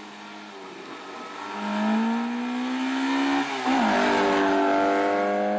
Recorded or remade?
recorded